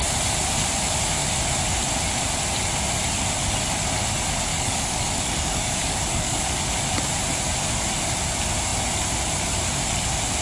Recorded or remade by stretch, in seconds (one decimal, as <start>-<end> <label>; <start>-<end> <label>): 0.0-4.5 recorded; 4.5-6.7 remade; 6.7-10.4 recorded